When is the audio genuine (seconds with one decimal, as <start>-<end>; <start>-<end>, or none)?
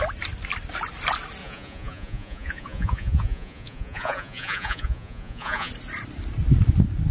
0.0-1.4; 5.7-7.1